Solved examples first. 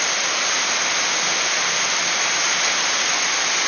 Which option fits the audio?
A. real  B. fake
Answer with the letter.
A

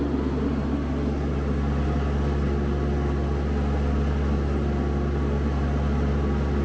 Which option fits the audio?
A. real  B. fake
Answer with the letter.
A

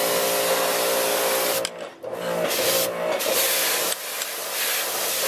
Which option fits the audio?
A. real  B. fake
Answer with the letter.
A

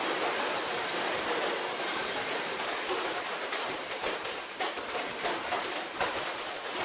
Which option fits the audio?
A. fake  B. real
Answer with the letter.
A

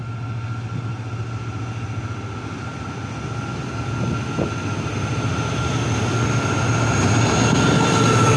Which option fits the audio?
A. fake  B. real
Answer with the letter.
B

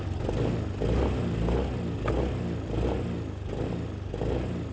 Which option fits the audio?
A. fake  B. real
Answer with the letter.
B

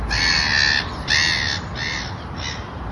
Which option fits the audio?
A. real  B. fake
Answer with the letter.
A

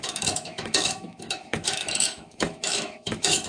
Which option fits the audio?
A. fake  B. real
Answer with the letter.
A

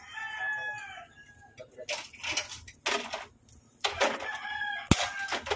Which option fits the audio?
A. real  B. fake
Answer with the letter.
A